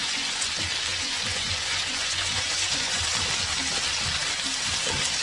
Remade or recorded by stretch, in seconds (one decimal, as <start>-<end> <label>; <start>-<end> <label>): 0.0-0.5 remade; 0.5-0.9 recorded; 0.9-3.0 remade; 3.0-5.2 recorded